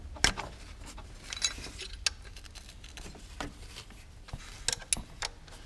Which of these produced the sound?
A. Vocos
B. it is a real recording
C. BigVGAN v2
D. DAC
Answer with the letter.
B